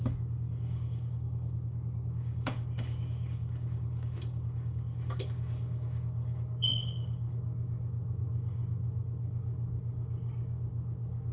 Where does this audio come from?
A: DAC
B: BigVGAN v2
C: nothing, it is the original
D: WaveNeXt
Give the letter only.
A